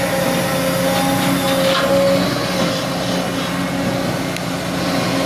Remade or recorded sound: recorded